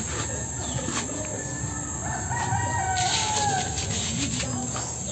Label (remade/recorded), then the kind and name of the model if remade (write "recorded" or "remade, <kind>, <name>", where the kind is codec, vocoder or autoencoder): recorded